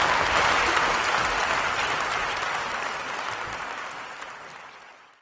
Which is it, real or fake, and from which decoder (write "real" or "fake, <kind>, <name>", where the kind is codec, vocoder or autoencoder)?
real